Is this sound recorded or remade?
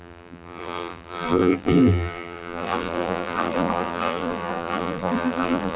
remade